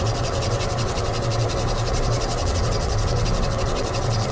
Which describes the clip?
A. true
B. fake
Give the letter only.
B